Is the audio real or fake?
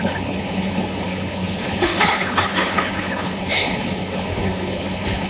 fake